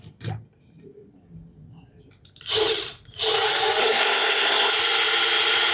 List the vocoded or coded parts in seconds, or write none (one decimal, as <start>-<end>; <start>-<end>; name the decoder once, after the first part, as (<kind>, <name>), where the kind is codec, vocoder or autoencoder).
3.8-4.7 (codec, SNAC)